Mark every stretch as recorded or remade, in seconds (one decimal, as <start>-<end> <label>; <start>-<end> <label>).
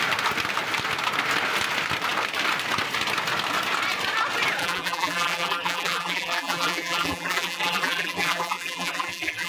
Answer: 0.0-4.6 recorded; 4.6-9.5 remade